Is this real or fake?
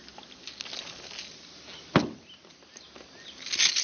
real